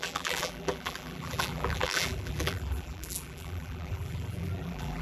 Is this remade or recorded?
remade